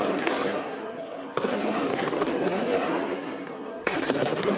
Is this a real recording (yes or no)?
no